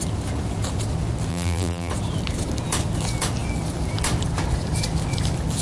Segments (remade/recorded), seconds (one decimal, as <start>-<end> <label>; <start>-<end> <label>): 0.0-1.3 recorded; 1.3-1.9 remade; 1.9-5.6 recorded

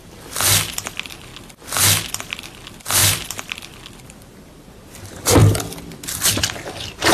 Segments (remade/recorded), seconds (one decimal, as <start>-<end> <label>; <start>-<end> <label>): 0.0-1.3 remade; 1.3-2.2 recorded; 2.2-7.1 remade

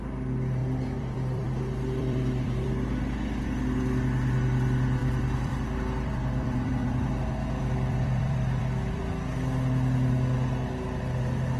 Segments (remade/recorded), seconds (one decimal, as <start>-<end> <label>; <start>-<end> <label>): 0.0-0.6 recorded; 0.6-2.7 remade; 2.7-5.0 recorded; 5.0-7.1 remade; 7.1-7.6 recorded; 7.6-9.0 remade; 9.0-11.6 recorded

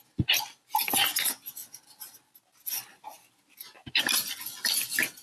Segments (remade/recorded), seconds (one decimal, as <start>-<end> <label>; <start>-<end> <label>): 0.0-1.6 recorded; 1.6-4.0 remade; 4.0-5.2 recorded

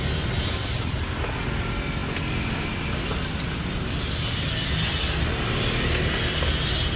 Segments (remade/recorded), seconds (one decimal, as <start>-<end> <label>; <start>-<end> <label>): 0.0-7.0 recorded

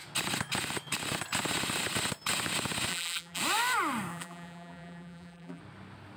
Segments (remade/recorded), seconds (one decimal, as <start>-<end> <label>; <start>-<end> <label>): 0.0-2.9 recorded; 2.9-3.4 remade; 3.4-4.1 recorded; 4.1-5.6 remade; 5.6-6.2 recorded

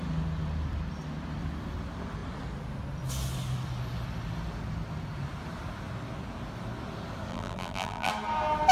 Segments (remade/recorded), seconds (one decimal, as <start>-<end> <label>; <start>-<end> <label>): 0.0-7.3 recorded; 7.3-8.1 remade; 8.1-8.7 recorded

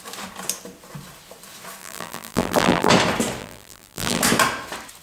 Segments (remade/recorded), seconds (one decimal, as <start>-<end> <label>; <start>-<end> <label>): 0.0-1.8 recorded; 1.8-2.9 remade; 2.9-3.4 recorded; 3.4-4.2 remade; 4.2-5.0 recorded